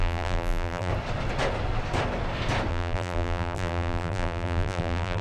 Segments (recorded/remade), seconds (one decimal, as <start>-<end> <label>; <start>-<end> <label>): 0.0-0.9 remade; 0.9-2.7 recorded; 2.7-5.2 remade